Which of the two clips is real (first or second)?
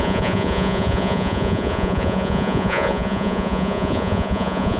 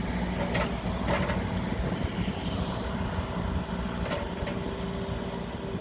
second